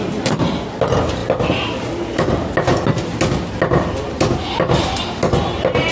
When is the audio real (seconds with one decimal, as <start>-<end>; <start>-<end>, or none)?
0.0-5.9